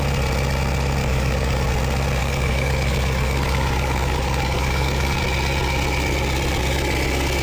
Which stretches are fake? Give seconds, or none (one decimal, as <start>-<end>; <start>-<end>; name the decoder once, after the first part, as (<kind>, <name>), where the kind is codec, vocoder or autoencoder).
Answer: 1.0-1.7 (codec, DAC); 2.2-5.2